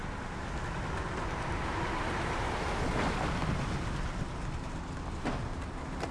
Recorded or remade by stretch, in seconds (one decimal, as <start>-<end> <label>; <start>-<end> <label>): 0.0-6.1 recorded